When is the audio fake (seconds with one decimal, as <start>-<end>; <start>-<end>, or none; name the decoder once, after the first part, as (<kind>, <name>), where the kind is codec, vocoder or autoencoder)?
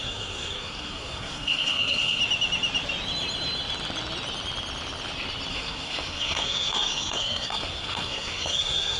0.0-2.2 (codec, SNAC); 5.5-9.0